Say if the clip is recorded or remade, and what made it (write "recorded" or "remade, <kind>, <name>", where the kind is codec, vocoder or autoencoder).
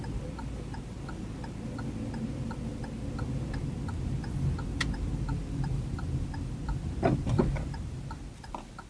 recorded